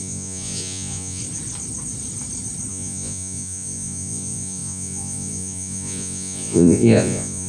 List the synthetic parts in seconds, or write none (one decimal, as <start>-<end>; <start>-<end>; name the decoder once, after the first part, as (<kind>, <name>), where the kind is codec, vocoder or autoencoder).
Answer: 0.0-1.2 (vocoder, Vocos); 2.7-7.5